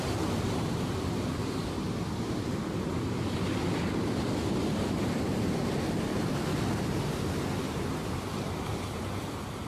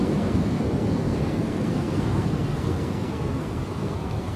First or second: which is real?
first